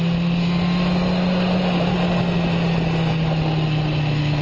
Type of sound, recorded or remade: recorded